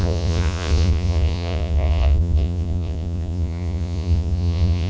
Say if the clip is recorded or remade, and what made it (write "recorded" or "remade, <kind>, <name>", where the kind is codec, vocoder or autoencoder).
remade, vocoder, Vocos